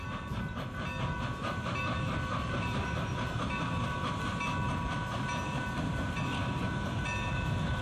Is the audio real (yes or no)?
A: yes